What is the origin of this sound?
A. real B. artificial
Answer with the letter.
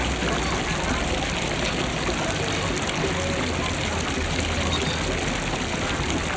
A